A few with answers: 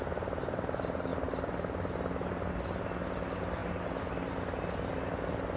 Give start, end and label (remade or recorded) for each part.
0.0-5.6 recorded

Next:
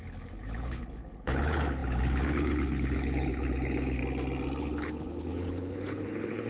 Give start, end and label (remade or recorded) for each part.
0.0-4.0 remade; 4.0-4.6 recorded; 4.6-6.5 remade

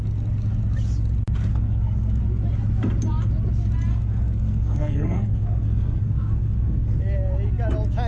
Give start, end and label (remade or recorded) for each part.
0.0-1.5 recorded; 1.5-2.2 remade; 2.2-3.9 recorded; 3.9-7.0 remade; 7.0-8.1 recorded

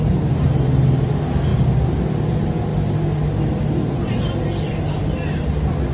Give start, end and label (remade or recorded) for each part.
0.0-5.9 recorded

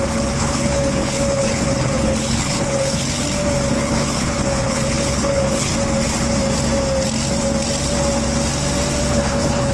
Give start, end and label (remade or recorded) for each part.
0.0-3.2 remade; 3.2-3.7 recorded; 3.7-5.7 remade; 5.7-9.1 recorded; 9.1-9.7 remade